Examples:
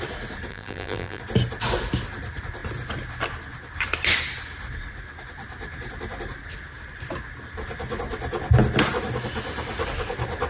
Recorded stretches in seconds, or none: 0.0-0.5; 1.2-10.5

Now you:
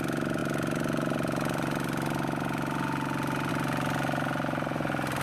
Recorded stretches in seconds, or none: 0.0-5.2

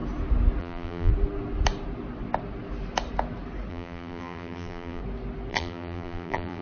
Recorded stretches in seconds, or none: 0.0-0.6; 1.1-3.7; 5.0-5.5

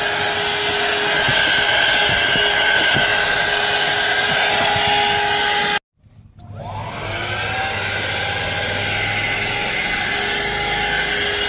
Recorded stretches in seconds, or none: 0.0-11.5

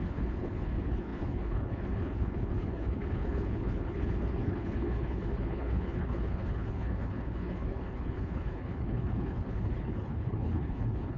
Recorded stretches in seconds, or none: none